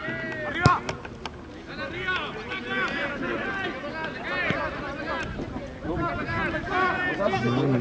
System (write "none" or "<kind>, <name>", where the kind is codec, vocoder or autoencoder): none